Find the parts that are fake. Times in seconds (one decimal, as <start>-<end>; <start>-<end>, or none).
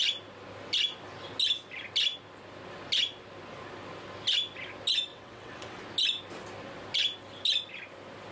5.1-5.8